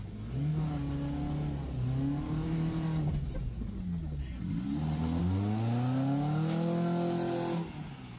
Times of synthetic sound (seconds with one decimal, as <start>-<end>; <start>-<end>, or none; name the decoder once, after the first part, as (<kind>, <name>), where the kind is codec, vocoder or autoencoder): none

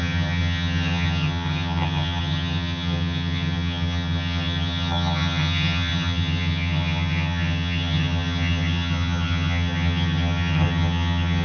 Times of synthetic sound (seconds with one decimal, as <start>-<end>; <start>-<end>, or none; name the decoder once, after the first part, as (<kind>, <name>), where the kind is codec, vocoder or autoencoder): 0.0-11.4 (vocoder, HiFi-GAN)